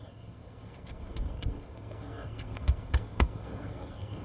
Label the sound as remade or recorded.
remade